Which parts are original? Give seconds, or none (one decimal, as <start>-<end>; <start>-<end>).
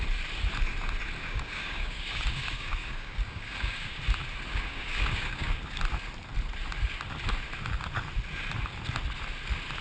0.0-1.2; 4.0-4.5; 5.7-9.8